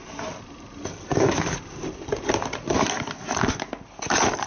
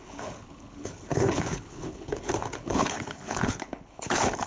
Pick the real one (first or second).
first